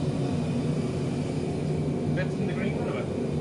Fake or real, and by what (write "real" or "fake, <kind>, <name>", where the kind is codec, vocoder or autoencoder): real